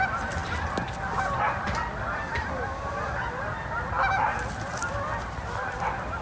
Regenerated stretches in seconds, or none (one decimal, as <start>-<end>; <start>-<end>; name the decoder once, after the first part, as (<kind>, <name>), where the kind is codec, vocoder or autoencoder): none